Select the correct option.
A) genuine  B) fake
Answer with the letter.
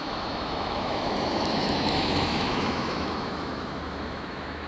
B